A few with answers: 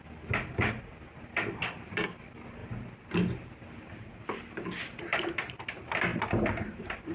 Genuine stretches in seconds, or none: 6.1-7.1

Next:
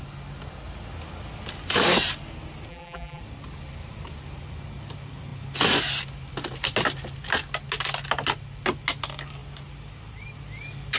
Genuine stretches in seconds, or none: 0.0-2.7; 3.2-11.0

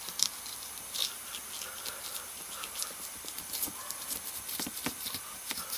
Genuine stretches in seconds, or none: 1.0-3.9; 4.8-5.3

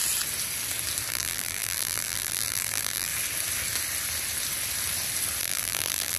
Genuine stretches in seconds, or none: 0.0-1.1; 3.1-5.4

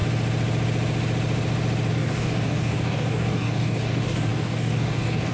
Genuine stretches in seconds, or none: 0.0-1.9

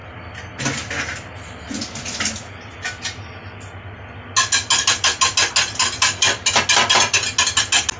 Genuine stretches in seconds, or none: 0.0-8.0